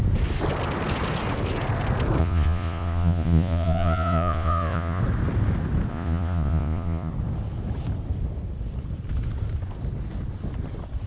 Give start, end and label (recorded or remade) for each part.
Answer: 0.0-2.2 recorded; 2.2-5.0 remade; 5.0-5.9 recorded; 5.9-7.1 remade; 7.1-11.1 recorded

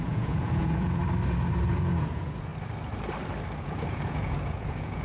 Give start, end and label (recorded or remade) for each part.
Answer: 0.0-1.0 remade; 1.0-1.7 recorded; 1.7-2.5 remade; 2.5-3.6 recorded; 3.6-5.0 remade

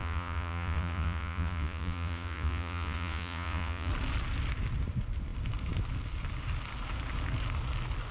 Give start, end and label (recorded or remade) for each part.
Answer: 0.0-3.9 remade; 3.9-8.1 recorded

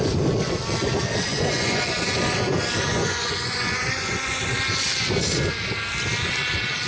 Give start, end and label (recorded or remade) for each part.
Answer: 0.0-1.3 recorded; 1.3-1.8 remade; 1.8-2.9 recorded; 2.9-4.4 remade; 4.4-6.9 recorded

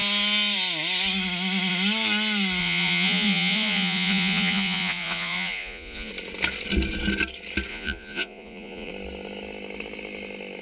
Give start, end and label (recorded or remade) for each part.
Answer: 0.0-2.6 recorded; 2.6-6.1 remade; 6.1-7.7 recorded; 7.7-8.9 remade; 8.9-10.6 recorded

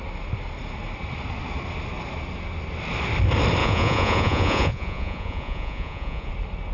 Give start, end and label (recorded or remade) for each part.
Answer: 0.0-3.6 recorded; 3.6-6.3 remade; 6.3-6.7 recorded

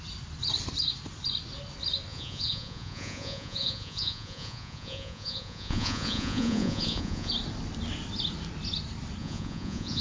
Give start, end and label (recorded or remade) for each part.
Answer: 0.0-2.1 recorded; 2.1-7.3 remade; 7.3-9.2 recorded; 9.2-10.0 remade

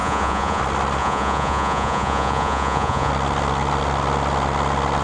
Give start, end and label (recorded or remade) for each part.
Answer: 0.0-0.6 remade; 0.6-1.0 recorded; 1.0-3.1 remade; 3.1-5.0 recorded